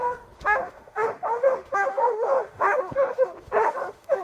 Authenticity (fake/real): fake